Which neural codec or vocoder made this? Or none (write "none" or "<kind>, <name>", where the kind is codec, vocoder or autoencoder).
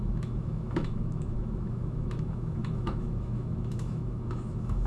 autoencoder, DAC-VAE